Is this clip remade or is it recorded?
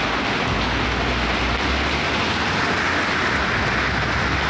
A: recorded